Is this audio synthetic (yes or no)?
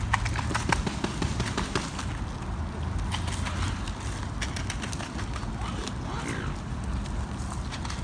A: no